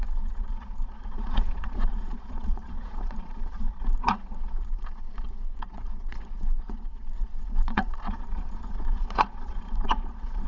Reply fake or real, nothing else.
fake